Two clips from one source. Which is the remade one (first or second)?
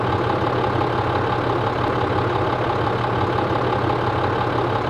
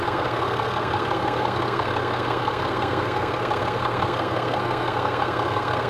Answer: second